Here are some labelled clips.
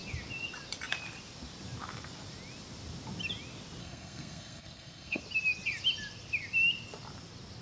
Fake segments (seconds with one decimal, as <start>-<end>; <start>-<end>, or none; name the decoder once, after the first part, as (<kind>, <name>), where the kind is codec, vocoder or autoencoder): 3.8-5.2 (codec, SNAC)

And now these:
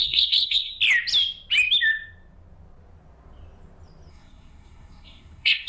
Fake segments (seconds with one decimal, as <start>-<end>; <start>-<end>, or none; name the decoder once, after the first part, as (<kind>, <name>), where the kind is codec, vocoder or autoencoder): 0.0-0.7 (codec, SNAC); 4.1-5.7

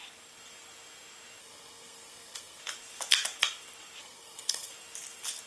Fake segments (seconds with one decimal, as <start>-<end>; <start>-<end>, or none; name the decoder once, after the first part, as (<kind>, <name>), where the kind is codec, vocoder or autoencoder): 1.4-2.6 (codec, SNAC); 4.0-4.7

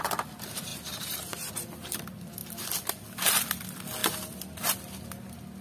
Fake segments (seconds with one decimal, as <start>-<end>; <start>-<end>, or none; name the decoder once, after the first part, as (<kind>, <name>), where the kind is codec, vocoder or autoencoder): none

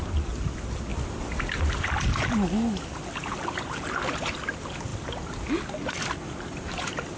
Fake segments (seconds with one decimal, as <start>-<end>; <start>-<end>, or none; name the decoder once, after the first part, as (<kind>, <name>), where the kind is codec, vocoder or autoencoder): none